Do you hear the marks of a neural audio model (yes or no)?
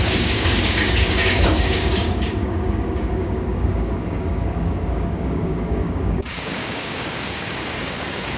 yes